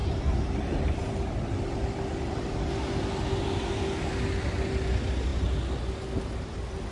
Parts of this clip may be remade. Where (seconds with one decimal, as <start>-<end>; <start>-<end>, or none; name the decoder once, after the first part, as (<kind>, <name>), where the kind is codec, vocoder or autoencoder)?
none